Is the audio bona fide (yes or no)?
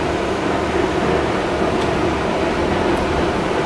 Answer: yes